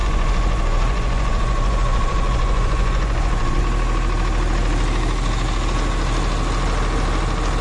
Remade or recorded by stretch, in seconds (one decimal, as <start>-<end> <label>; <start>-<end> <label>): 0.0-3.6 remade; 3.6-7.6 recorded

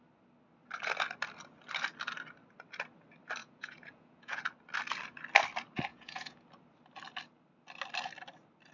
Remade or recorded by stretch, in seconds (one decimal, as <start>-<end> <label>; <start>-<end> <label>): 0.0-3.4 recorded; 3.4-4.4 remade; 4.4-5.9 recorded; 5.9-6.4 remade; 6.4-8.7 recorded

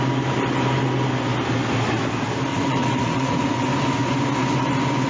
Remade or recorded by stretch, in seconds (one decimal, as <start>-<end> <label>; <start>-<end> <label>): 0.0-2.5 recorded; 2.5-3.6 remade; 3.6-5.1 recorded

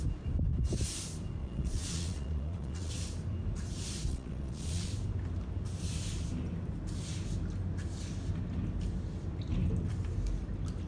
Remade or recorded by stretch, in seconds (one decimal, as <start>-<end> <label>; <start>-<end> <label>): 0.0-1.4 recorded; 1.4-2.9 remade; 2.9-4.1 recorded; 4.1-4.9 remade; 4.9-10.9 recorded

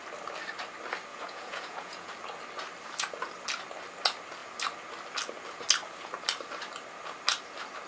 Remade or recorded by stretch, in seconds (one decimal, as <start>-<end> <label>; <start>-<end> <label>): 0.0-1.1 recorded; 1.1-2.1 remade; 2.1-7.9 recorded

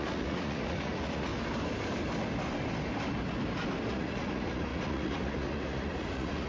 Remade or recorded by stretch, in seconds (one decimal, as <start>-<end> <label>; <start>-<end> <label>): 0.0-1.3 remade; 1.3-3.9 recorded; 3.9-6.5 remade

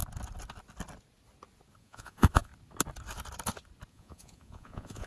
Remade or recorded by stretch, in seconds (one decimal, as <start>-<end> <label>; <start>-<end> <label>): 0.0-1.8 recorded; 1.8-2.5 remade; 2.5-3.9 recorded; 3.9-5.1 remade

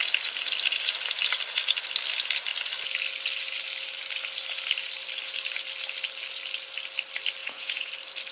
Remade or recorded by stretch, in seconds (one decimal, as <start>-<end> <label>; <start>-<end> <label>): 0.0-7.4 recorded; 7.4-7.9 remade; 7.9-8.3 recorded